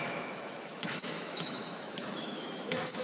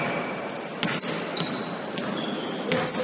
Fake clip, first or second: first